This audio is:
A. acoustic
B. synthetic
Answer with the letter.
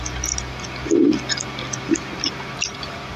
A